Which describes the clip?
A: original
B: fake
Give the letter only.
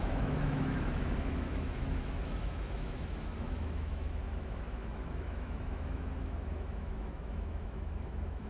B